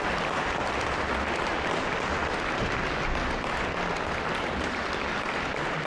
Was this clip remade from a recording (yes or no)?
no